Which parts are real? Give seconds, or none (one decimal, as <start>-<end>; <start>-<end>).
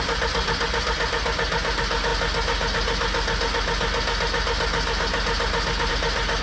0.0-6.4